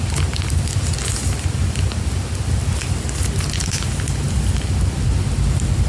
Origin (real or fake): real